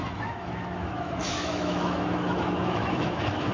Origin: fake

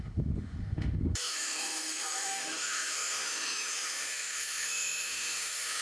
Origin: fake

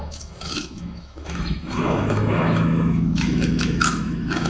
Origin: fake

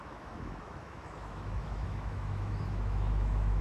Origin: fake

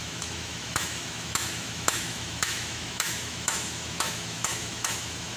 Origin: fake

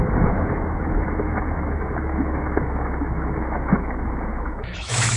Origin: fake